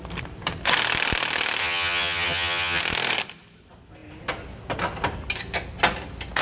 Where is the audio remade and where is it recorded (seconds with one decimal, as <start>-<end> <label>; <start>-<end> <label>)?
0.0-1.6 recorded; 1.6-2.8 remade; 2.8-6.4 recorded